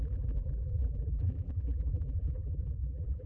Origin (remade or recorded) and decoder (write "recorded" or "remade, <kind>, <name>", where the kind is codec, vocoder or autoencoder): remade, vocoder, BigVGAN v2